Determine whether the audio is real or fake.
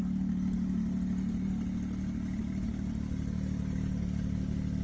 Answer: real